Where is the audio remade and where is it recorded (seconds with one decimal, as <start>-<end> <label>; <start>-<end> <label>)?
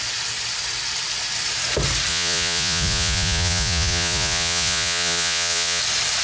0.0-2.1 recorded; 2.1-5.8 remade; 5.8-6.2 recorded